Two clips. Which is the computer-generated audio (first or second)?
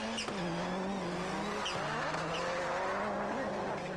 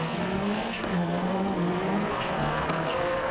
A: second